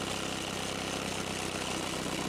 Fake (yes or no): no